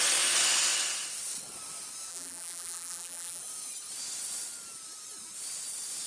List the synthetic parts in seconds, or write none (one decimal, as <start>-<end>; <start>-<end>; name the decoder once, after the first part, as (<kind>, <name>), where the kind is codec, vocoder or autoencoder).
2.1-3.4 (vocoder, BigVGAN v2)